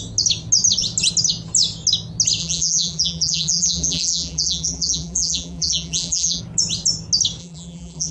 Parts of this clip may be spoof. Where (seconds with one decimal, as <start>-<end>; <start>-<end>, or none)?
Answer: 2.4-6.4; 7.4-8.1